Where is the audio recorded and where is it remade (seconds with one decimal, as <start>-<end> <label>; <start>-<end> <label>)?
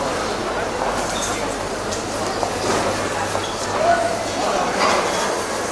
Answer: 0.0-5.7 recorded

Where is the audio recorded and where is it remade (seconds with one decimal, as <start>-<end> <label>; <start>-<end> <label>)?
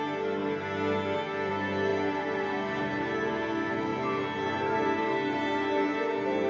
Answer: 0.0-6.5 recorded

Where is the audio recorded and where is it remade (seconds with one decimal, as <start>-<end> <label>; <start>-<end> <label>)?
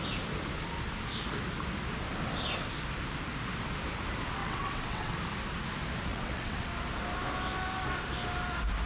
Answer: 0.0-4.4 recorded; 4.4-5.1 remade; 5.1-6.1 recorded; 6.1-6.7 remade; 6.7-8.9 recorded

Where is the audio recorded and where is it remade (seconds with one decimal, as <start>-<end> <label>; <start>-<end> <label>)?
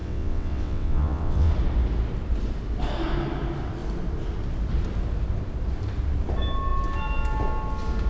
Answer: 0.0-1.5 remade; 1.5-8.1 recorded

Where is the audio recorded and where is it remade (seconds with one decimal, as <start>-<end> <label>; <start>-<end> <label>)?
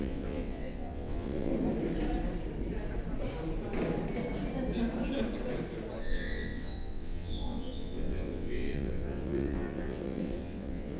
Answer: 0.0-1.5 remade; 1.5-6.0 recorded; 6.0-11.0 remade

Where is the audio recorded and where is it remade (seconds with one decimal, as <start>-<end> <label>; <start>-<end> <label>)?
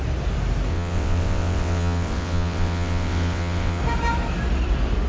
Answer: 0.0-0.7 recorded; 0.7-3.8 remade; 3.8-5.1 recorded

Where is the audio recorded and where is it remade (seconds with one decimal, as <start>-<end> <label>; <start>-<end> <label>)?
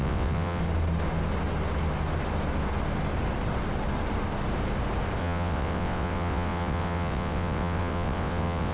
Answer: 0.0-0.6 remade; 0.6-5.2 recorded; 5.2-8.7 remade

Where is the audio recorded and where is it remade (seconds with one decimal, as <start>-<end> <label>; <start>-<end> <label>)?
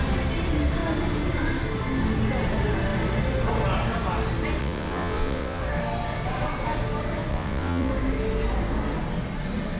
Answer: 0.0-4.6 recorded; 4.6-5.6 remade; 5.6-7.3 recorded; 7.3-7.9 remade; 7.9-9.8 recorded